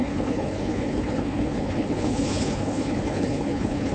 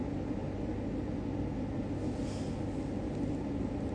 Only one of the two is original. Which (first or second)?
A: second